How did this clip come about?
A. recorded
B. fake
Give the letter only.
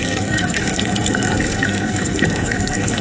B